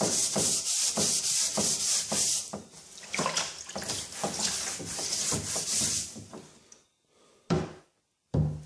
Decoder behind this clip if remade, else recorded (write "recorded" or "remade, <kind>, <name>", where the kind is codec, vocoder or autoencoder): remade, vocoder, BigVGAN v2